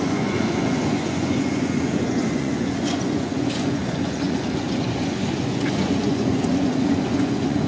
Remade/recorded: remade